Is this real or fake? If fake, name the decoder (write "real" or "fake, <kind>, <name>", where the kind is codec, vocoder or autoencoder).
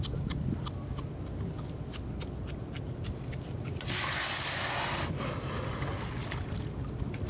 real